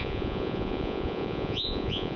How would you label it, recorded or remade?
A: remade